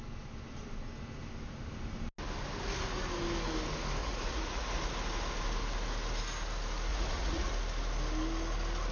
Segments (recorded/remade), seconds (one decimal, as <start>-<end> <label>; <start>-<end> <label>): 0.0-4.0 recorded; 4.0-4.7 remade; 4.7-6.9 recorded; 6.9-7.5 remade; 7.5-8.9 recorded